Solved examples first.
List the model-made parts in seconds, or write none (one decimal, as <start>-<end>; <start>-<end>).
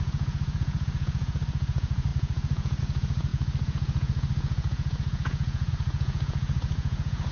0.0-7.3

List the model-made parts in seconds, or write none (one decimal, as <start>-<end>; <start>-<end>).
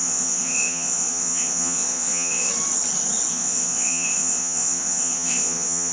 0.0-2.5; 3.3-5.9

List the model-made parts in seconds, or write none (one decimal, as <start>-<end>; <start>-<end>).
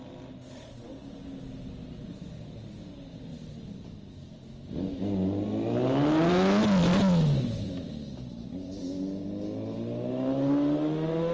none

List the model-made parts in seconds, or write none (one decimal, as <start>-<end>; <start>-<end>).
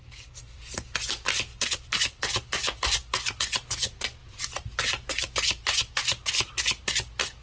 none